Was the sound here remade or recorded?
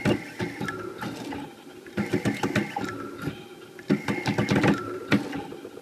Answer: recorded